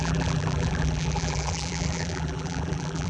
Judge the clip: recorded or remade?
remade